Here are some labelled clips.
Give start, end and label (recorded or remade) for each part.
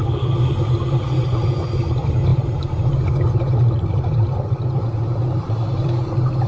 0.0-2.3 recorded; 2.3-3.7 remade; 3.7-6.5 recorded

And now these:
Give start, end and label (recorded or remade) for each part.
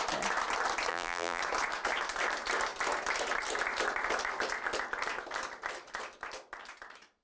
0.0-0.9 recorded; 0.9-1.4 remade; 1.4-7.2 recorded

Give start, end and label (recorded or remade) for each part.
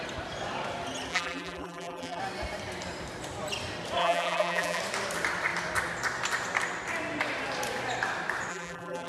0.0-1.1 recorded; 1.1-2.2 remade; 2.2-4.0 recorded; 4.0-4.8 remade; 4.8-8.5 recorded; 8.5-9.1 remade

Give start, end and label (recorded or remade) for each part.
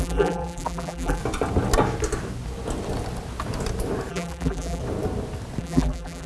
0.0-1.2 remade; 1.2-4.1 recorded; 4.1-4.8 remade; 4.8-5.6 recorded; 5.6-6.3 remade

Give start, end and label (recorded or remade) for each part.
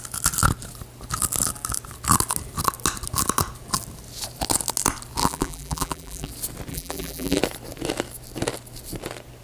0.0-5.2 recorded; 5.2-6.3 remade; 6.3-6.7 recorded; 6.7-7.4 remade; 7.4-9.4 recorded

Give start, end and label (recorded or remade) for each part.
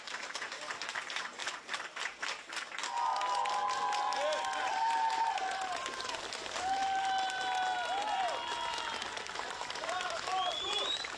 0.0-1.4 remade; 1.4-5.1 recorded; 5.1-6.8 remade; 6.8-9.0 recorded; 9.0-11.2 remade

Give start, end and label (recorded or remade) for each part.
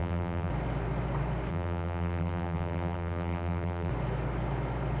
0.0-0.5 remade; 0.5-1.5 recorded; 1.5-3.9 remade; 3.9-5.0 recorded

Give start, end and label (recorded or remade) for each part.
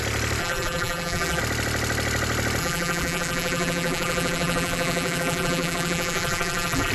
0.0-0.4 recorded; 0.4-1.4 remade; 1.4-2.6 recorded; 2.6-6.9 remade